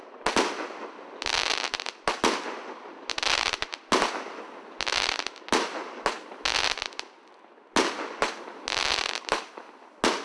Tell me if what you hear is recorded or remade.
recorded